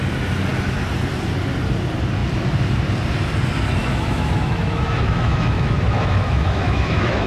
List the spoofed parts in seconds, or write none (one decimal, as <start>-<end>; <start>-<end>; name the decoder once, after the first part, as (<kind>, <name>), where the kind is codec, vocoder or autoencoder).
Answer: 3.8-7.3 (autoencoder, DAC-VAE)